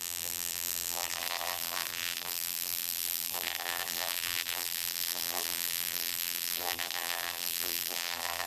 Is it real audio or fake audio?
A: fake